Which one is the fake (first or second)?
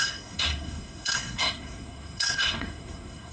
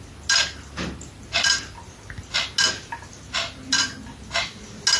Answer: first